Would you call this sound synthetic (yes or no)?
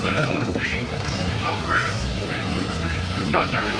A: yes